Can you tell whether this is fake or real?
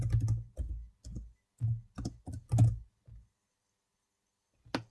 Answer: real